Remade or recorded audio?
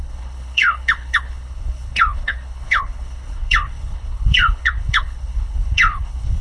remade